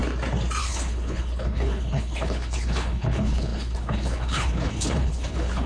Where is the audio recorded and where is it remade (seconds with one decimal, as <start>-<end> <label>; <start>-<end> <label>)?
0.0-0.6 recorded; 0.6-5.7 remade